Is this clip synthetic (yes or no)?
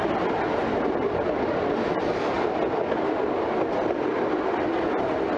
no